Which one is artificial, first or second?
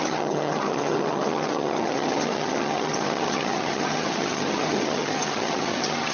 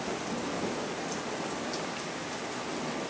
first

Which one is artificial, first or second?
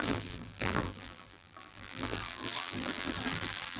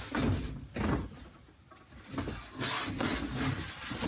first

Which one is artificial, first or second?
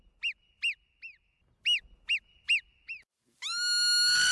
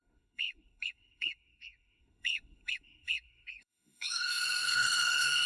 second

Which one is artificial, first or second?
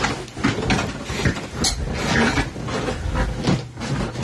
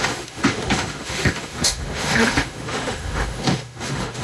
second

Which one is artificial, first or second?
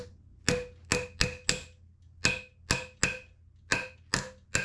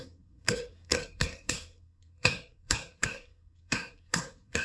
second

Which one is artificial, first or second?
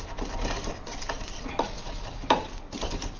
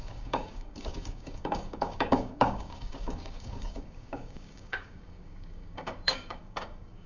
second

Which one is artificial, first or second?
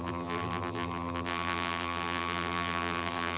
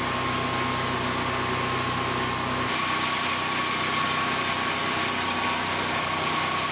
first